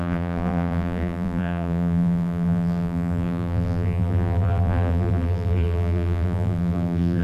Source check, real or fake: fake